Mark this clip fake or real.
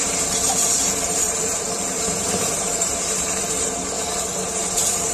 fake